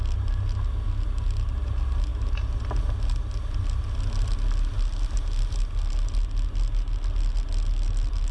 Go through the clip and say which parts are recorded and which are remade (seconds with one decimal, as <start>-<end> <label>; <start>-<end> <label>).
0.0-8.3 recorded